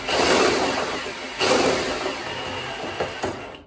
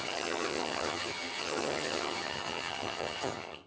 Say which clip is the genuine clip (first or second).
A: first